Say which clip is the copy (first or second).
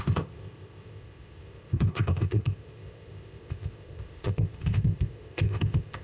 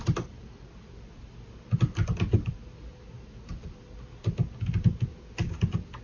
first